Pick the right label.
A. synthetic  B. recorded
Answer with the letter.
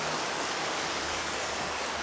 A